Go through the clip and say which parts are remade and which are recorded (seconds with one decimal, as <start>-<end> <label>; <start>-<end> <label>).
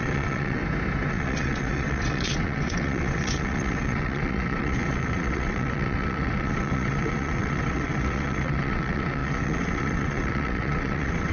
0.0-0.6 remade; 0.6-1.1 recorded; 1.1-11.3 remade